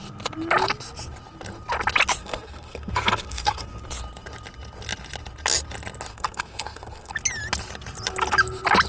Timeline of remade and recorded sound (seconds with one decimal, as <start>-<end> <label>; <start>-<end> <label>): 0.0-2.2 recorded; 2.2-3.8 remade; 3.8-6.1 recorded; 6.1-7.1 remade; 7.1-8.9 recorded